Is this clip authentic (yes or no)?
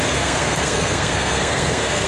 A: no